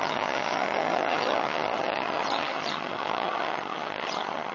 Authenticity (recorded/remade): remade